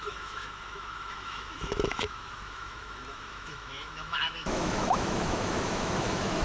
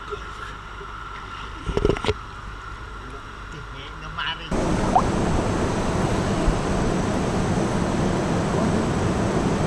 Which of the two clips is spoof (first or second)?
first